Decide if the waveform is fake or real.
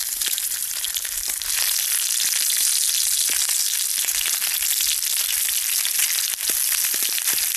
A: real